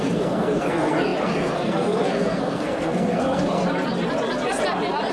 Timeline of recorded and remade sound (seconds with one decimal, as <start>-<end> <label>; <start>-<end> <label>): 0.0-3.6 remade; 3.6-5.1 recorded